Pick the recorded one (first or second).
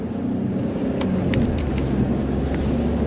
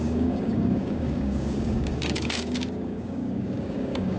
first